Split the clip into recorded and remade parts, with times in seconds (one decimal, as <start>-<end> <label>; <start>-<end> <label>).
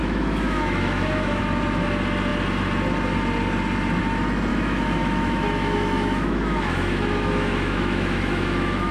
0.0-1.4 remade; 1.4-4.5 recorded; 4.5-8.9 remade